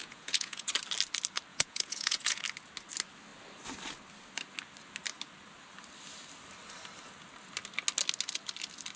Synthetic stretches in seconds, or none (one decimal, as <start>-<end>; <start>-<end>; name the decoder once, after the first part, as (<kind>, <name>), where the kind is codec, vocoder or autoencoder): 0.0-0.7 (vocoder, Vocos); 1.5-2.4